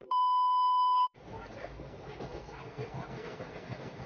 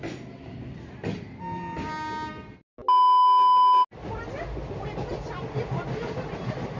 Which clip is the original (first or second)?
second